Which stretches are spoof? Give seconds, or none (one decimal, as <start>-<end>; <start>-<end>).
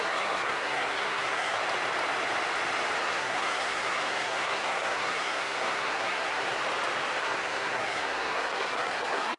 0.0-1.6; 3.0-6.6; 7.2-9.4